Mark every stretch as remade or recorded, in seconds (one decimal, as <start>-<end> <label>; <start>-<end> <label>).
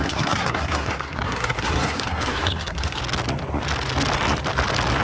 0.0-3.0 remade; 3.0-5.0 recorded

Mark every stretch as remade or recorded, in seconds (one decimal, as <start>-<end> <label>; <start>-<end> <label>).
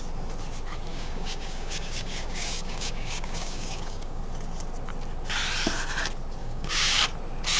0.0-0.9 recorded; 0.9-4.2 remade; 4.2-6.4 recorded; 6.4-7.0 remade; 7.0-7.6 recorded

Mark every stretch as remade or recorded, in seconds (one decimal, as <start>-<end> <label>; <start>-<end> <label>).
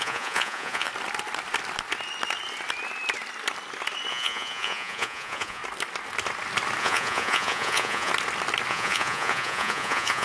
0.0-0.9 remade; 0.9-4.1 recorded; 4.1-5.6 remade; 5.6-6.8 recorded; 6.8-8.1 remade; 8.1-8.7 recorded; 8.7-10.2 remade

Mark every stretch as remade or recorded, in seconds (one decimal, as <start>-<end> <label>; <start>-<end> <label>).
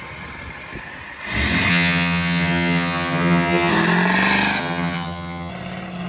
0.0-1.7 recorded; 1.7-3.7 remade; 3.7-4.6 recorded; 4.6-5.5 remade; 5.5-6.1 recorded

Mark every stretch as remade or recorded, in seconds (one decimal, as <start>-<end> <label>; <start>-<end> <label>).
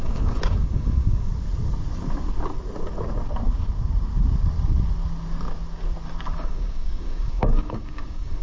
0.0-1.3 remade; 1.3-6.3 recorded; 6.3-8.4 remade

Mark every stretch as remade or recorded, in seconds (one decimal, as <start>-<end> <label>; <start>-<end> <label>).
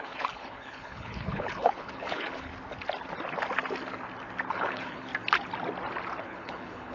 0.0-2.5 remade; 2.5-4.5 recorded; 4.5-5.1 remade; 5.1-6.2 recorded; 6.2-6.9 remade